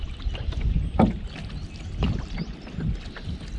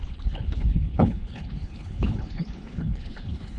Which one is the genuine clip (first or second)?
first